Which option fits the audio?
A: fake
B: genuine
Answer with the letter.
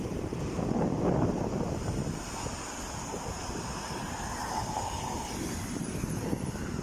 A